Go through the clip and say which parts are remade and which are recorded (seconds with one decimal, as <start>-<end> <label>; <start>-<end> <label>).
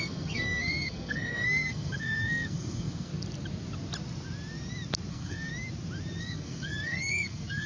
0.0-3.1 remade; 3.1-5.1 recorded; 5.1-5.5 remade; 5.5-6.2 recorded; 6.2-7.7 remade